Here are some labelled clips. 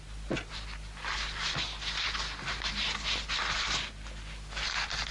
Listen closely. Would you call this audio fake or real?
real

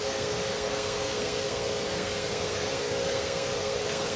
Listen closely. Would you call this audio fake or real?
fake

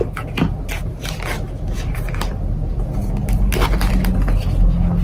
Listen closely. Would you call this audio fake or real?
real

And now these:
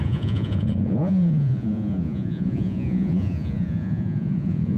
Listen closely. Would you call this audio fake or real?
fake